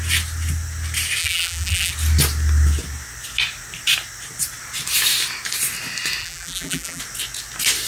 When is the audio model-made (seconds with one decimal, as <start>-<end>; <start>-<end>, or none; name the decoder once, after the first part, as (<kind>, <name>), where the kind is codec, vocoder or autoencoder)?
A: 1.2-1.9 (vocoder, BigVGAN v2); 6.2-7.0